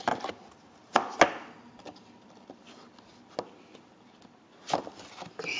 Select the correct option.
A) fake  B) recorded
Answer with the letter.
B